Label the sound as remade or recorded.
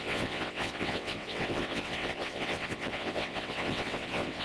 remade